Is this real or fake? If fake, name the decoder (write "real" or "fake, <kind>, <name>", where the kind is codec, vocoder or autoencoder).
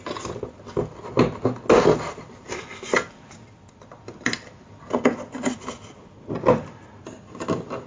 real